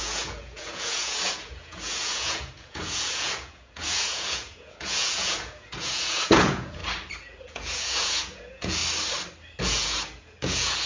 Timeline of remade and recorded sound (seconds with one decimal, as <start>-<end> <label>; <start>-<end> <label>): 0.0-6.8 remade; 6.8-7.4 recorded; 7.4-8.8 remade; 8.8-9.6 recorded; 9.6-10.9 remade